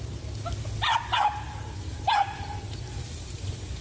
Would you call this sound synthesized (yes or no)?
no